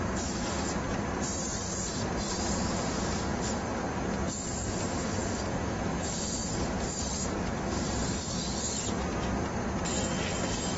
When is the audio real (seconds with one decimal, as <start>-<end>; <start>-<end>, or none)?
0.0-0.9; 2.1-6.4; 8.2-10.8